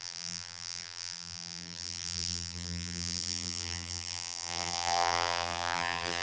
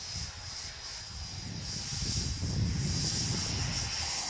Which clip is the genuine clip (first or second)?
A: second